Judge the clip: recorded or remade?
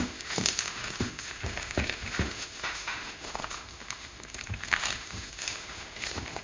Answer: remade